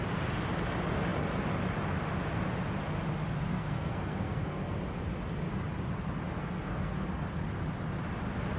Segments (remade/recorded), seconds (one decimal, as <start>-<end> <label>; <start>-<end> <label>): 0.0-3.5 recorded; 3.5-4.8 remade; 4.8-6.4 recorded; 6.4-7.1 remade; 7.1-8.6 recorded